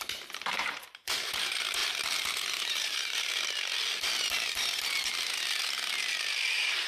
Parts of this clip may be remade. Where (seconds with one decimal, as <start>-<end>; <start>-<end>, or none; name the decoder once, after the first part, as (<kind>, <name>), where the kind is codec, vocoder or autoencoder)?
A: 0.0-1.8 (vocoder, BigVGAN v2); 2.7-3.7; 6.5-6.9